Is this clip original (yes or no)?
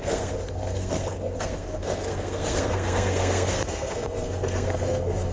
no